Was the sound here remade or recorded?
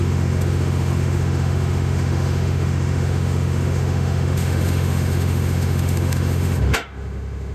remade